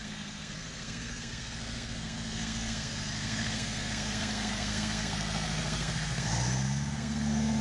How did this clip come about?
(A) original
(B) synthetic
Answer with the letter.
B